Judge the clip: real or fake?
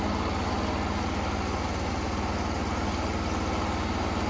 real